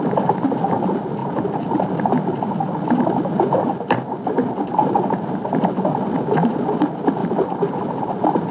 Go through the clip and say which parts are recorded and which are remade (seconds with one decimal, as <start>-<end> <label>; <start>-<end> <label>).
0.0-1.2 recorded; 1.2-3.6 remade; 3.6-7.2 recorded; 7.2-8.5 remade